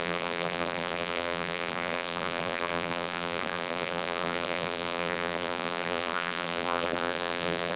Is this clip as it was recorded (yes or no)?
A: no